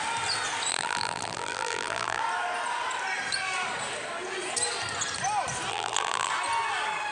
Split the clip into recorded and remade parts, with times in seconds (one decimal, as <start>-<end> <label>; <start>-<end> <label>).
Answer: 0.0-0.7 recorded; 0.7-2.2 remade; 2.2-5.7 recorded; 5.7-6.3 remade; 6.3-7.1 recorded